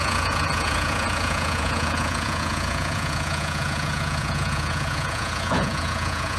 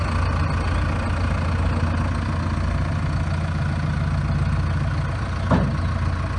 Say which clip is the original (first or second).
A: second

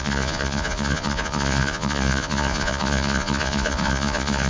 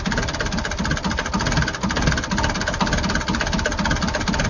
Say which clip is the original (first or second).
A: second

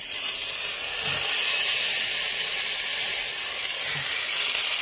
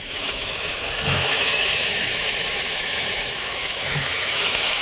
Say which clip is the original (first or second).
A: first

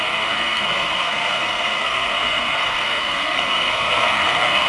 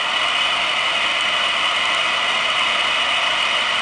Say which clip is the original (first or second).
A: second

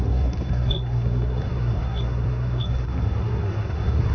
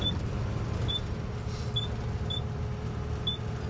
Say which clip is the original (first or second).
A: second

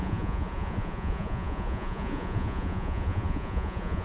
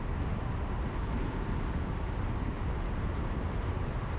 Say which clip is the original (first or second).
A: second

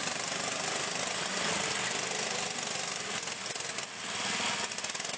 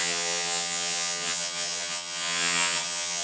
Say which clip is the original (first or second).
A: first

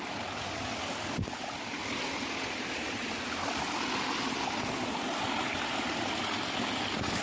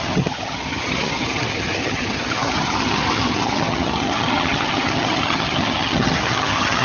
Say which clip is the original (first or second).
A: first